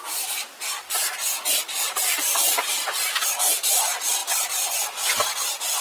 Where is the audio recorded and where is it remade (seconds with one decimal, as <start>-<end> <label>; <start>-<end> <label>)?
0.0-5.8 recorded